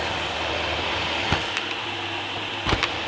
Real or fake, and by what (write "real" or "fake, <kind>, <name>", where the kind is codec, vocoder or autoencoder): real